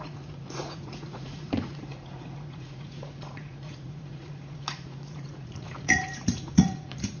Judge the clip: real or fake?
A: fake